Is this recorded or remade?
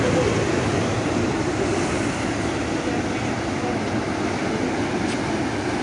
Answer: recorded